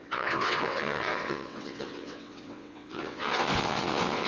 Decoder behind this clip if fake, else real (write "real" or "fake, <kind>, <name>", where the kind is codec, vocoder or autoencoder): fake, vocoder, WaveNeXt